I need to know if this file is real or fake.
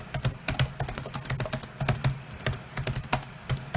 real